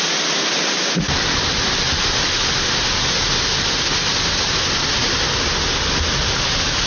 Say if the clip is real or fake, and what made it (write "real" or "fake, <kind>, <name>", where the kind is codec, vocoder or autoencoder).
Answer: real